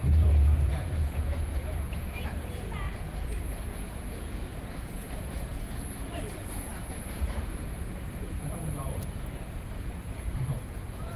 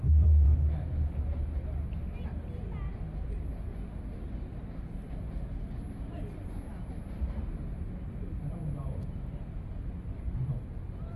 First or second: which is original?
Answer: second